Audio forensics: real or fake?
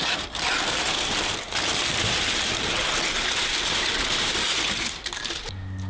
real